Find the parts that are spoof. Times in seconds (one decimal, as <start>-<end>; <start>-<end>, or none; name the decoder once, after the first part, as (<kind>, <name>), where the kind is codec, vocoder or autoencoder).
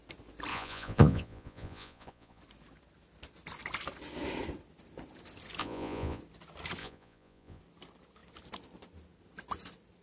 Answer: 0.5-2.4 (vocoder, Vocos); 5.6-6.2; 6.8-7.6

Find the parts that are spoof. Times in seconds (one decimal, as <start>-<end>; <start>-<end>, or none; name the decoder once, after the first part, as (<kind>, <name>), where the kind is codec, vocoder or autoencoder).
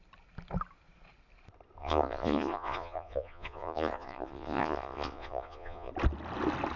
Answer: 1.8-5.9 (vocoder, Vocos)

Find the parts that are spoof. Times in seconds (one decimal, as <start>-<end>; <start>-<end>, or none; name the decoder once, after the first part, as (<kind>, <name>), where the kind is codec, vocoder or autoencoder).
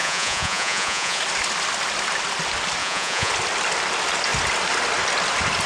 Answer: 0.0-1.2 (vocoder, Vocos); 2.8-3.3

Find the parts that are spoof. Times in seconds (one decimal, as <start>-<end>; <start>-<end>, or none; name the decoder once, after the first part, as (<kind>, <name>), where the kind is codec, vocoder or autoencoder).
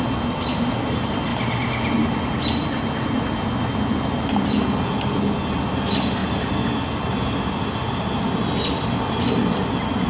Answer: none